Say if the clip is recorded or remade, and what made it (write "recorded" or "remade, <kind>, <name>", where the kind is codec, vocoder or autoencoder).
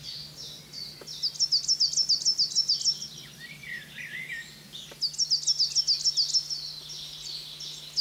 recorded